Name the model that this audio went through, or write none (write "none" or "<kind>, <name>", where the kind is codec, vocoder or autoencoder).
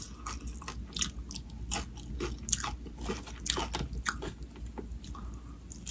none